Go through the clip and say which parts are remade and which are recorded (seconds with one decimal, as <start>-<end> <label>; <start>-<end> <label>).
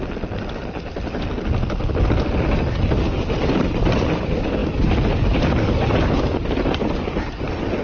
0.0-7.8 recorded